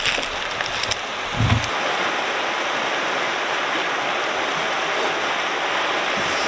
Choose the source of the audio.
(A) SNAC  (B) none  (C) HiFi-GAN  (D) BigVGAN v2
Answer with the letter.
B